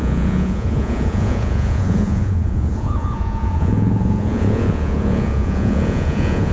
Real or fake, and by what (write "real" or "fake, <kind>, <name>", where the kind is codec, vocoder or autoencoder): fake, vocoder, Vocos